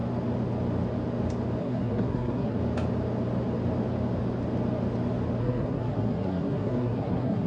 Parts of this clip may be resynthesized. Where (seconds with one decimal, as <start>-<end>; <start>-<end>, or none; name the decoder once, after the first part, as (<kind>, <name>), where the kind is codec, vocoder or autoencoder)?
1.6-2.6 (codec, SNAC); 5.4-7.5